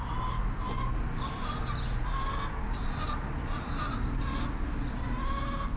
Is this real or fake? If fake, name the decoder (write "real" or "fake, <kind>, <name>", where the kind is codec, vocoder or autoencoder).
real